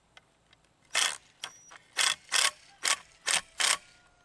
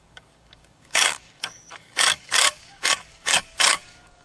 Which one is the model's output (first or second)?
second